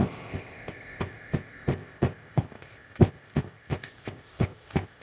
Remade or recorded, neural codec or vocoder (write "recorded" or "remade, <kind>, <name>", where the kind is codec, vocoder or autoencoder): remade, codec, ZipCodec